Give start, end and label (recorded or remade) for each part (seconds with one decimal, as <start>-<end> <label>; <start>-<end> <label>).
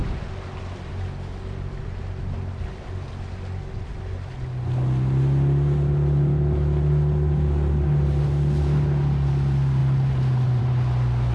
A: 0.0-11.3 recorded